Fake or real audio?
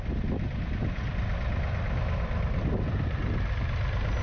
real